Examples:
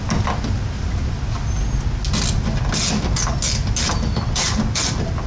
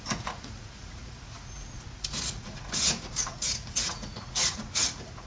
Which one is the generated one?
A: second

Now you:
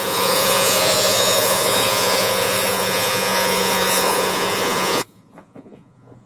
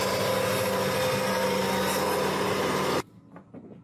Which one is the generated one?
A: first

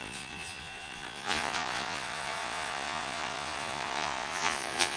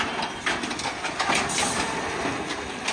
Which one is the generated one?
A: first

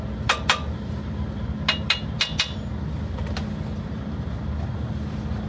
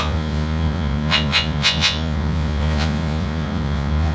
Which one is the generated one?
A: second